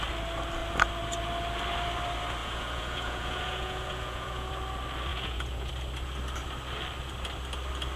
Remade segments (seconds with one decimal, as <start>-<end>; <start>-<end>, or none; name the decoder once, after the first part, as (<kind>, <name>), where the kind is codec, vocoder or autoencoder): 2.4-4.5 (vocoder, Vocos); 5.1-5.7